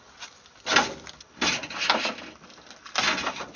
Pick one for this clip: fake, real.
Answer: real